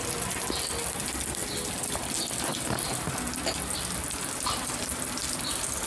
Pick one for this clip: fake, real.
real